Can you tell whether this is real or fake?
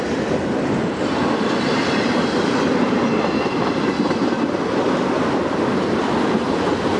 fake